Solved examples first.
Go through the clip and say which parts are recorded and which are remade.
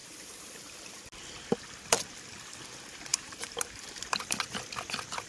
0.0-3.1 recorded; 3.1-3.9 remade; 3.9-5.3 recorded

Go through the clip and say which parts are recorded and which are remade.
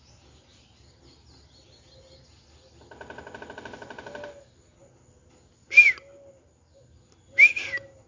0.0-8.1 recorded